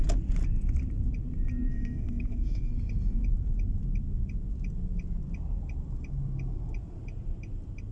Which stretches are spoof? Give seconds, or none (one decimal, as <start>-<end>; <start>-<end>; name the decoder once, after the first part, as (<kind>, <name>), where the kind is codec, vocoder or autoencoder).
1.7-2.7 (codec, SNAC)